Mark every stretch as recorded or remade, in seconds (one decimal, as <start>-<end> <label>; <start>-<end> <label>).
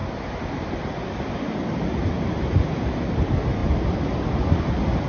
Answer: 0.0-3.6 recorded; 3.6-5.1 remade